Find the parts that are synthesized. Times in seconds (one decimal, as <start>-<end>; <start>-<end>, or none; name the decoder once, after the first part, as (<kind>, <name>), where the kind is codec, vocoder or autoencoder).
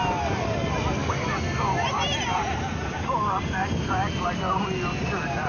none